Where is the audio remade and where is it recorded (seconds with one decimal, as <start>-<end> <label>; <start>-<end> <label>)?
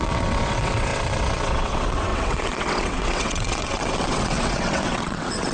0.0-5.5 remade